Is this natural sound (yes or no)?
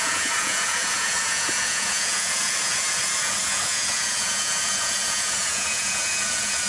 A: no